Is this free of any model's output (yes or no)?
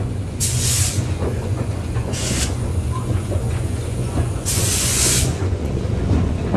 no